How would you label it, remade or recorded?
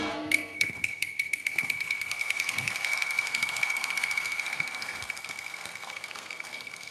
remade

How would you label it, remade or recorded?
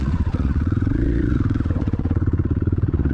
remade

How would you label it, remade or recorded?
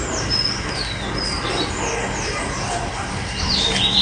recorded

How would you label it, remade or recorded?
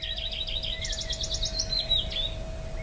recorded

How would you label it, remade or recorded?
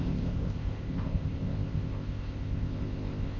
remade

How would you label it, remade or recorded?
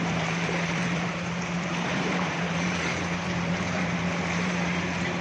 remade